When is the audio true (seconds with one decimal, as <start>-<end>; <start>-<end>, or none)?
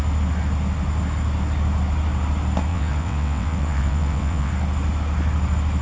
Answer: 0.0-2.7; 4.5-5.8